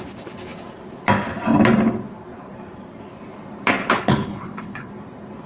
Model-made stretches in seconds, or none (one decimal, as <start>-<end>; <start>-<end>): 3.8-4.9